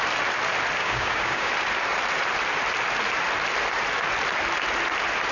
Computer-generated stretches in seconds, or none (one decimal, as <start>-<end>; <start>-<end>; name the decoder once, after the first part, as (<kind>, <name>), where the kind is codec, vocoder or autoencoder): 0.8-1.5 (codec, DAC)